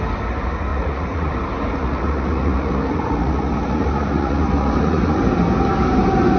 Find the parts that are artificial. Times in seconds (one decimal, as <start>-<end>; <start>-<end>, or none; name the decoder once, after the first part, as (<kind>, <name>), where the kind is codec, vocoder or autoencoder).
0.7-1.3 (vocoder, Vocos); 1.8-5.2